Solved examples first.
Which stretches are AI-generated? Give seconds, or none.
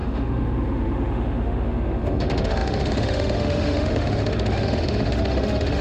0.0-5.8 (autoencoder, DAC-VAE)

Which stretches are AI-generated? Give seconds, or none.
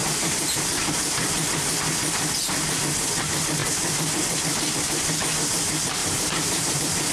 0.0-0.7 (vocoder, BigVGAN v2); 6.0-7.1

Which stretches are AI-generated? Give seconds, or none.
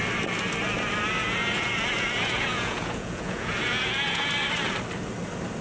1.2-4.3 (vocoder, Vocos)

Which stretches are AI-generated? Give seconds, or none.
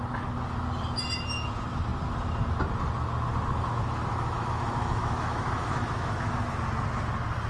3.5-6.6 (autoencoder, DAC-VAE)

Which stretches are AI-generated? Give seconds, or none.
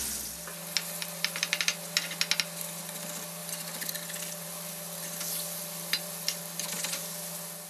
3.4-6.4 (vocoder, BigVGAN v2)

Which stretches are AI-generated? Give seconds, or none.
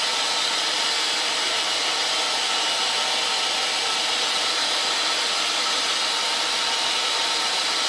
none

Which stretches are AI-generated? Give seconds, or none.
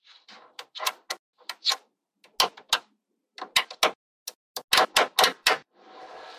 5.3-6.4 (vocoder, BigVGAN v2)